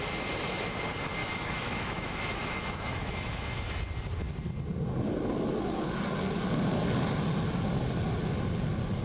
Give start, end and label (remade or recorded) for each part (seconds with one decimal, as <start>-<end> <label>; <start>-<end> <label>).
0.0-1.2 recorded; 1.2-3.8 remade; 3.8-9.0 recorded